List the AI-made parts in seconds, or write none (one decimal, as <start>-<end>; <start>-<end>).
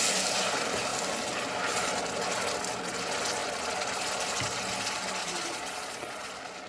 5.2-6.3